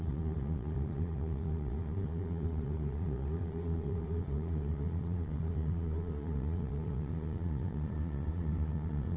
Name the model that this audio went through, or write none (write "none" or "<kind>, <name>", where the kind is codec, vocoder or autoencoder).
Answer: vocoder, Vocos